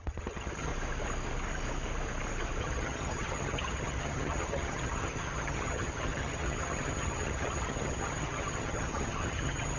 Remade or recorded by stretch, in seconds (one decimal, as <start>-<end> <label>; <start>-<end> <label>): 0.0-0.7 remade; 0.7-2.6 recorded; 2.6-9.8 remade